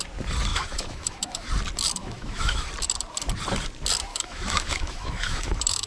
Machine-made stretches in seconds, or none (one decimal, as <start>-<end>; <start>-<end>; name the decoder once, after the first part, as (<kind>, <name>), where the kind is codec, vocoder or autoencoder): 0.5-1.5 (autoencoder, DAC-VAE); 2.0-2.7; 4.1-5.9